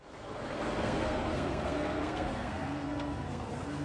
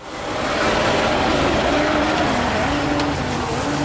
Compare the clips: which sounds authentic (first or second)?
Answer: second